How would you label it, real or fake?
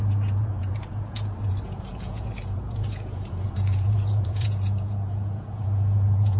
fake